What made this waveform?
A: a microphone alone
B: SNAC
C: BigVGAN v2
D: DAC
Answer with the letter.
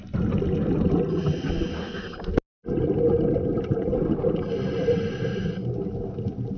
A